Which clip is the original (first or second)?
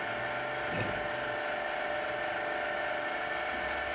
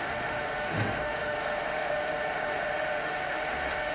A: first